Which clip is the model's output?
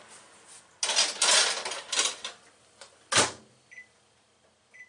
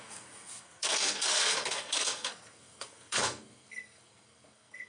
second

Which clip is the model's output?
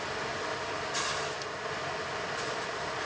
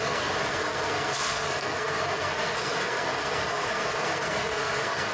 second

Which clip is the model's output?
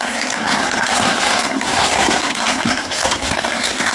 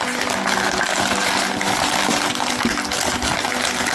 first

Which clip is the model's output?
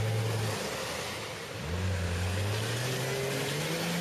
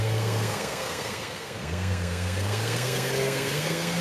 second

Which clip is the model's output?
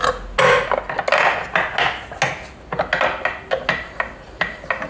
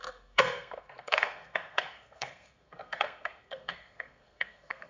second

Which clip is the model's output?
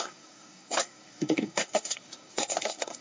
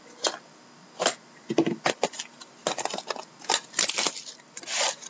first